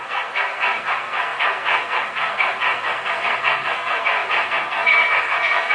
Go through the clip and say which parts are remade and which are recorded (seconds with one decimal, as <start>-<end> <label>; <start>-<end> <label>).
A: 0.0-5.7 remade